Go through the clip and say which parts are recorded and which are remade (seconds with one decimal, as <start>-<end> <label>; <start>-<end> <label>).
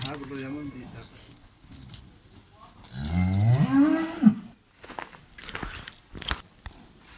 0.0-1.2 recorded; 1.2-2.0 remade; 2.0-7.2 recorded